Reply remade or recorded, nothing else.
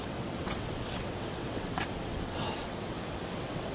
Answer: remade